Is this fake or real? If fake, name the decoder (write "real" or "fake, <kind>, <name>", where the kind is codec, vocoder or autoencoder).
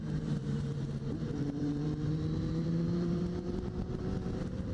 fake, vocoder, BigVGAN v2